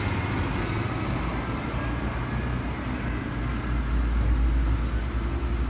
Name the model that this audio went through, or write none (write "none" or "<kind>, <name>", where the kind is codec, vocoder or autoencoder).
none